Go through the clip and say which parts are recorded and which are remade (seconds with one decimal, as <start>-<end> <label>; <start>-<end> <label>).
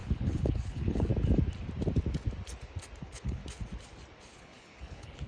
0.0-1.1 remade; 1.1-3.0 recorded; 3.0-3.4 remade; 3.4-4.2 recorded; 4.2-5.3 remade